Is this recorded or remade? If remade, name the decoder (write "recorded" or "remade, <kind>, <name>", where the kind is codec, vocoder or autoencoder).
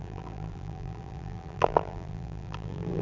remade, vocoder, BigVGAN v2